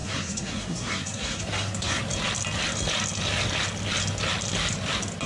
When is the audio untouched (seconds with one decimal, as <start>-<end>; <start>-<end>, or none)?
2.0-5.3